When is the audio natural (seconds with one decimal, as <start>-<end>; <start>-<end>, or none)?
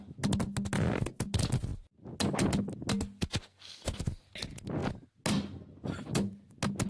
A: 0.0-3.4; 4.0-6.9